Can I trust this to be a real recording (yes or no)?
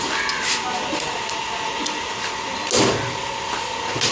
yes